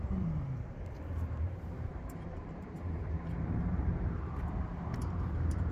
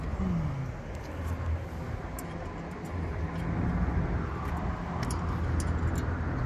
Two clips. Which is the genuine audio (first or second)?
second